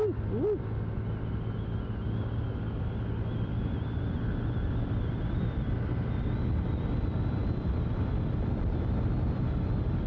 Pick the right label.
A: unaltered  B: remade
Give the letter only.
A